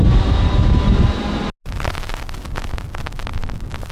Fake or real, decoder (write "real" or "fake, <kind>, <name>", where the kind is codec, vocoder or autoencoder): real